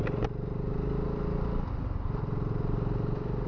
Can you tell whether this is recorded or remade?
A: recorded